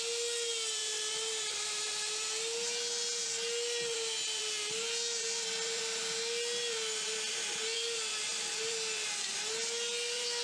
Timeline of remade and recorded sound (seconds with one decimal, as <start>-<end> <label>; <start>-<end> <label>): 0.0-10.4 recorded